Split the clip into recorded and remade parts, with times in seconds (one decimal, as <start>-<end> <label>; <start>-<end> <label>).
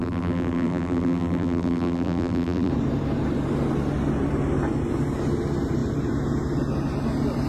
0.0-2.7 remade; 2.7-7.5 recorded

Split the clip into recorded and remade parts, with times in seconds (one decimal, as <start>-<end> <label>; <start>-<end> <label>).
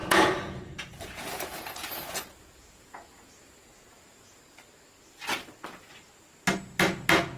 0.0-4.4 remade; 4.4-7.4 recorded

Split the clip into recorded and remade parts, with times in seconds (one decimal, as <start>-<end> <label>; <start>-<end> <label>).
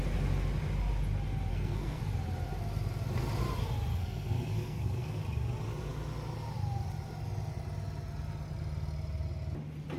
0.0-1.5 recorded; 1.5-2.0 remade; 2.0-3.9 recorded; 3.9-5.2 remade; 5.2-10.0 recorded